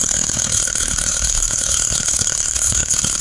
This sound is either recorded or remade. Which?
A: remade